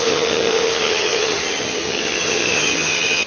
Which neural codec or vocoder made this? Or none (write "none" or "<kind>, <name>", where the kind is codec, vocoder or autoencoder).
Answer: vocoder, HiFi-GAN